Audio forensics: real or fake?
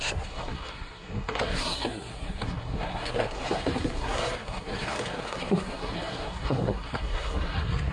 fake